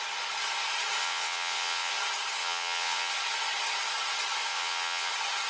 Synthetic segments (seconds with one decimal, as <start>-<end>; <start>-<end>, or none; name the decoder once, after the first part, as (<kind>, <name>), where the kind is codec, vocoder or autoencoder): 1.0-1.9 (vocoder, WaveNeXt); 2.4-3.1; 4.5-5.1

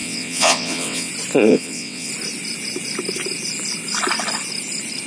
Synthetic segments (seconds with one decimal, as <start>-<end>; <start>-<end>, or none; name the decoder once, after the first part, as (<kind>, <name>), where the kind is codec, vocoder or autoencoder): 0.0-1.1 (vocoder, WaveNeXt); 1.5-2.1

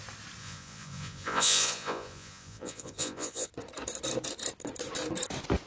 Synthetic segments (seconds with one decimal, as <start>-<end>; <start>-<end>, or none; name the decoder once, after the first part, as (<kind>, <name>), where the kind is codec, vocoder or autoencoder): 0.4-3.5 (vocoder, Vocos)

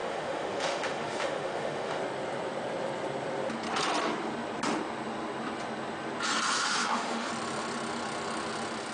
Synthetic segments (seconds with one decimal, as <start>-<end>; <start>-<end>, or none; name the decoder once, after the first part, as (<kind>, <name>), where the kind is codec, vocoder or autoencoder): 0.0-2.0 (autoencoder, DAC-VAE); 6.6-7.3

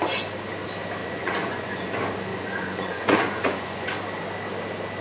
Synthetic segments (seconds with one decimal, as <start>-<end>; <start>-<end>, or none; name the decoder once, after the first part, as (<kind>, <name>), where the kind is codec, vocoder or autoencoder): 1.0-1.9 (vocoder, Vocos); 2.3-3.9

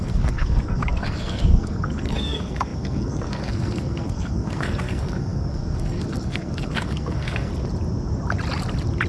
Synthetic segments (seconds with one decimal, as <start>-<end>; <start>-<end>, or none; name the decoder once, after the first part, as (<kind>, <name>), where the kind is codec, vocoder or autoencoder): 0.0-7.5 (codec, SNAC)

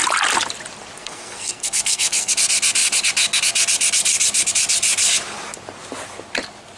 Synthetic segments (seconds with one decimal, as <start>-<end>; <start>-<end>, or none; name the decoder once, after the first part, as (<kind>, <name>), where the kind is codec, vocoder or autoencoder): 1.0-2.3 (codec, SNAC)

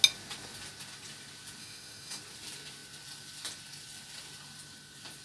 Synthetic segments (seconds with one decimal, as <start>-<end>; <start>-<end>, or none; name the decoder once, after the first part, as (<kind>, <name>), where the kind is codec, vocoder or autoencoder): 1.6-2.2 (autoencoder, DAC-VAE)